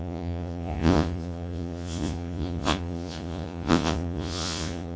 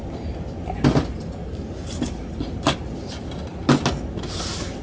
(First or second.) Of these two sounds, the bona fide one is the second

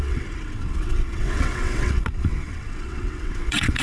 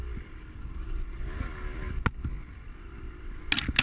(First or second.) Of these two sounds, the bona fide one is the second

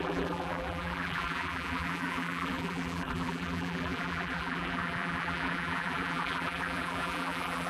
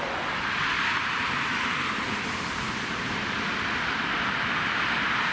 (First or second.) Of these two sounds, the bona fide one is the second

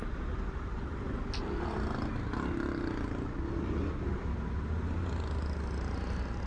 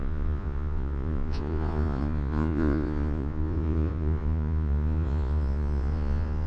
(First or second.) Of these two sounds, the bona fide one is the first